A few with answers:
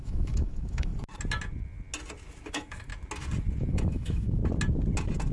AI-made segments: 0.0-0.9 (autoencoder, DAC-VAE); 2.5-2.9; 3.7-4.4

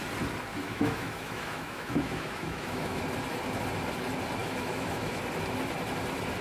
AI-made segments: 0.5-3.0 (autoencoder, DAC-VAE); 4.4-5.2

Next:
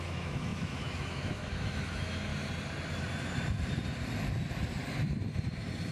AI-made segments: 0.0-2.3 (autoencoder, DAC-VAE)

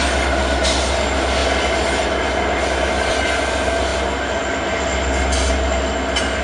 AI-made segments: none

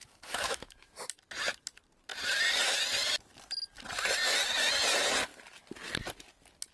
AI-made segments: 0.0-0.9 (autoencoder, DAC-VAE)